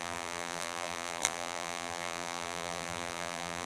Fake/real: fake